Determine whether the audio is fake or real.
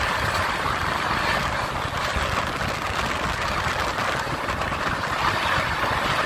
real